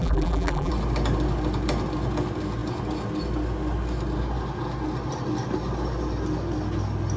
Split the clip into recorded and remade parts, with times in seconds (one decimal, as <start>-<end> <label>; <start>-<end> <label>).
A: 0.0-0.7 remade; 0.7-7.2 recorded